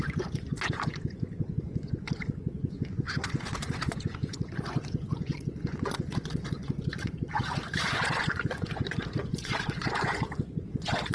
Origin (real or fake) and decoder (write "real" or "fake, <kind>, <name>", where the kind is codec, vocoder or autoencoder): fake, vocoder, Vocos